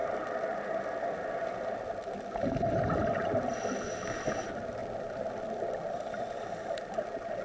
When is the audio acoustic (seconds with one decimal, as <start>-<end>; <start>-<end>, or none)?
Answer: 0.0-7.4